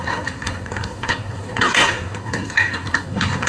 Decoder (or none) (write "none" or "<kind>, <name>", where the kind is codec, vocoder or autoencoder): codec, SNAC